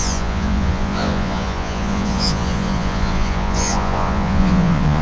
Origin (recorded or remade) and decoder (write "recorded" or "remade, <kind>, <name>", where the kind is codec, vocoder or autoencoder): remade, vocoder, Vocos